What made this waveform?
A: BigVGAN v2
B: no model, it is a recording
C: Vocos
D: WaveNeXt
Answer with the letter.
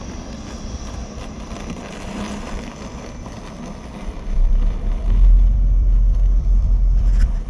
A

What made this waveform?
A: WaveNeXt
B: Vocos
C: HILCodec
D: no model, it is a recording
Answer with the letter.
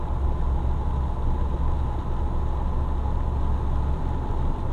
D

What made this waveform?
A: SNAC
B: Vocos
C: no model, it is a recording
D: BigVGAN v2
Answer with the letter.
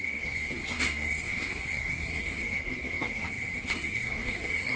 A